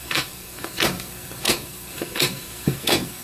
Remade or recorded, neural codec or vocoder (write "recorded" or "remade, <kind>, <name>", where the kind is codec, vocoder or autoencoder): remade, codec, SNAC